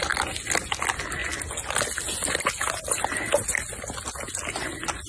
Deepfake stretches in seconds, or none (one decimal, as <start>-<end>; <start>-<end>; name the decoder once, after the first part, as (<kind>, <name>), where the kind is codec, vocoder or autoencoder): none

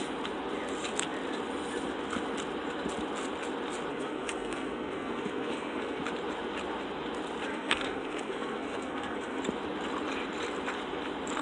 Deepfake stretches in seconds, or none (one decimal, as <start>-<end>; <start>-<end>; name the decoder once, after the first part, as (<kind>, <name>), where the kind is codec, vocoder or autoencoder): 3.9-6.0 (codec, SNAC); 7.5-9.4

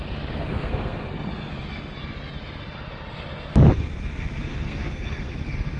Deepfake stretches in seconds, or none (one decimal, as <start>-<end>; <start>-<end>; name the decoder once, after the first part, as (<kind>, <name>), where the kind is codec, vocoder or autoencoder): 0.5-1.1 (codec, SNAC); 4.5-5.3

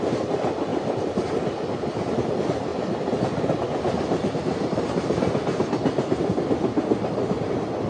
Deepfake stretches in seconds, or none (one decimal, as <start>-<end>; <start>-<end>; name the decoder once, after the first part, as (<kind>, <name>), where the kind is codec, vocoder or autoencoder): none

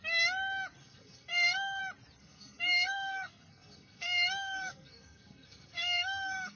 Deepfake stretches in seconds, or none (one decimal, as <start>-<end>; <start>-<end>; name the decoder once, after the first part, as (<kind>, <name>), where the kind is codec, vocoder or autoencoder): 0.8-1.8 (codec, SNAC); 2.2-6.6

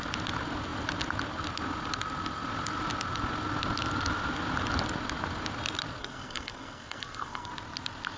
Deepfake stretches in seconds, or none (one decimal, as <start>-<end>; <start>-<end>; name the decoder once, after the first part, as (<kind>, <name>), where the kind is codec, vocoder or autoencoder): 6.0-7.5 (codec, SNAC)

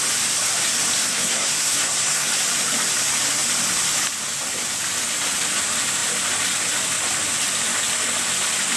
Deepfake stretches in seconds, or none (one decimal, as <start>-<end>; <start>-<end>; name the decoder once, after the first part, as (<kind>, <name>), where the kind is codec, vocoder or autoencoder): 1.0-2.3 (codec, SNAC)